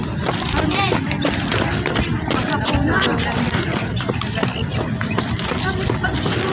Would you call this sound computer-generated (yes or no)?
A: yes